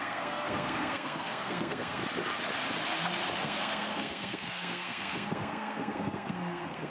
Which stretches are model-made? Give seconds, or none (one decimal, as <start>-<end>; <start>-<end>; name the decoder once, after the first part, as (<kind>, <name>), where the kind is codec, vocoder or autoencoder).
0.0-2.0 (codec, SNAC); 3.4-6.9